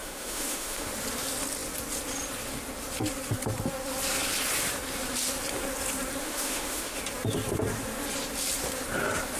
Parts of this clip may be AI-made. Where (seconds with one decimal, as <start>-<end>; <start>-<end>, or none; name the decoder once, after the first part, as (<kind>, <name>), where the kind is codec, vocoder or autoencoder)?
0.0-0.9 (autoencoder, DAC-VAE); 6.2-7.0

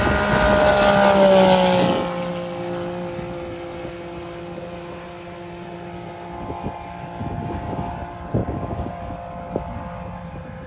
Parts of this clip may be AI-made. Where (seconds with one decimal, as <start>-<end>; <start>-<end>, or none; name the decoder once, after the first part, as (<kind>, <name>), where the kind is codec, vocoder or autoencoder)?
7.4-7.9 (codec, DAC); 8.4-9.0

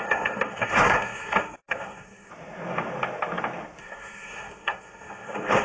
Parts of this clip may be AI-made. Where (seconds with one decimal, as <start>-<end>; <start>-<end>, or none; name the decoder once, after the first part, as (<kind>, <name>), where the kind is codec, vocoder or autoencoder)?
0.0-2.3 (codec, SNAC); 3.8-5.6

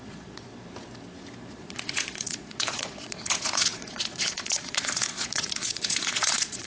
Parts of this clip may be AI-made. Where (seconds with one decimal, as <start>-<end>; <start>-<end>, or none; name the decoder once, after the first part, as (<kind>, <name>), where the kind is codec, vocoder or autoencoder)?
0.0-0.5 (vocoder, Vocos); 1.5-6.7

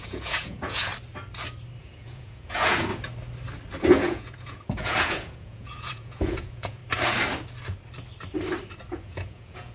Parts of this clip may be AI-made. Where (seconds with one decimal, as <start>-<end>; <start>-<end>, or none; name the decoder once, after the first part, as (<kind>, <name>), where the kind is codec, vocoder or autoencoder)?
0.0-0.9 (vocoder, Vocos); 1.8-2.9; 3.9-6.8; 8.9-9.7

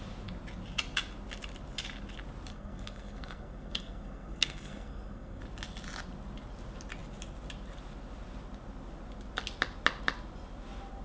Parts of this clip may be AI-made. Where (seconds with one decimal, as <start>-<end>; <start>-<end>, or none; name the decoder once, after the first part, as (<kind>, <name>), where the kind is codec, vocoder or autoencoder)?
2.5-5.4 (codec, SNAC)